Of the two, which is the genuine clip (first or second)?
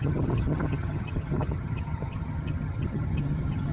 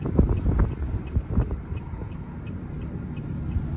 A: second